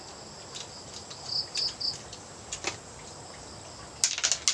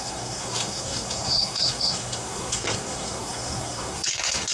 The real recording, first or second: first